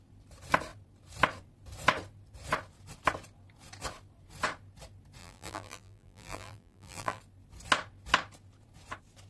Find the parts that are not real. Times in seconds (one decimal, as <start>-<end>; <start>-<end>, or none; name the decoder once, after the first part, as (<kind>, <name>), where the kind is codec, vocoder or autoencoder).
5.2-7.2 (vocoder, BigVGAN v2)